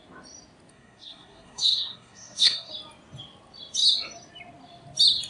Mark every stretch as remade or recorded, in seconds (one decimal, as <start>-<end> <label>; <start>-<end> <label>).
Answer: 0.0-0.7 recorded; 0.7-2.7 remade; 2.7-5.3 recorded